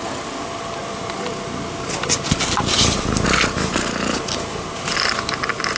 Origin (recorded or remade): recorded